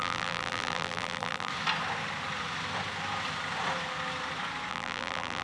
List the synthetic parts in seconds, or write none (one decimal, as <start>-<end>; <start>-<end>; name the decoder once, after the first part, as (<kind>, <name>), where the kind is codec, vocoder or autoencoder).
0.0-1.5 (vocoder, BigVGAN v2); 4.7-5.4